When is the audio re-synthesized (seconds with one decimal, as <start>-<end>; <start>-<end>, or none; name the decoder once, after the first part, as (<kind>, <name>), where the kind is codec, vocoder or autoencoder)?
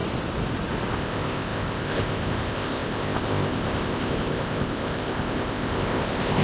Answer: 0.9-6.4 (codec, ZipCodec)